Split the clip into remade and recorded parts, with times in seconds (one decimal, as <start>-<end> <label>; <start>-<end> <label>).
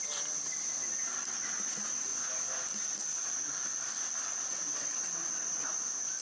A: 0.0-2.1 recorded; 2.1-3.0 remade; 3.0-5.2 recorded; 5.2-6.2 remade